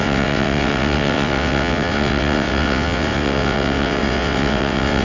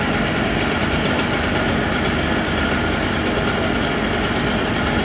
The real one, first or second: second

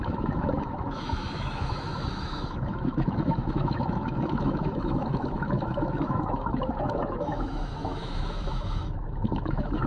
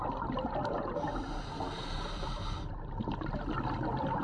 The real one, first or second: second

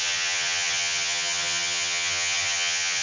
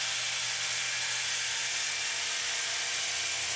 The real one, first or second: second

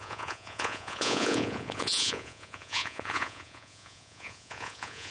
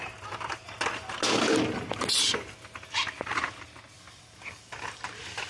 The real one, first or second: second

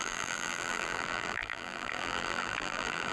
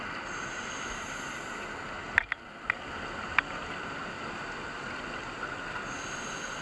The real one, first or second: second